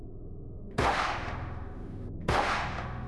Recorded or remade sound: remade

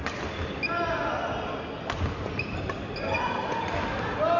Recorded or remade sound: recorded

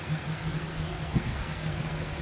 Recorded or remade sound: remade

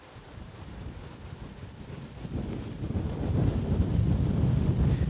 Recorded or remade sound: recorded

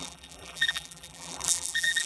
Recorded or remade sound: remade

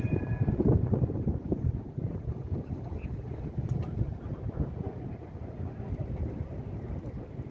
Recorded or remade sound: remade